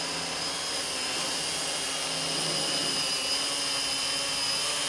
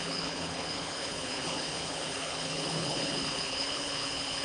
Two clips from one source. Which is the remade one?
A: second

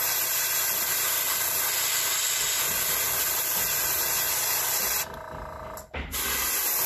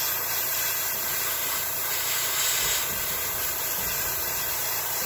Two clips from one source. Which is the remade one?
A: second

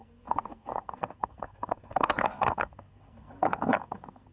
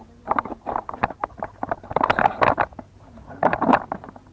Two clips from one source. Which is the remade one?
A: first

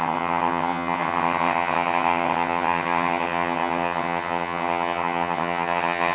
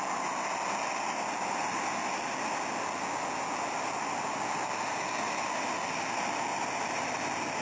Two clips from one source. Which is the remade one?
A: first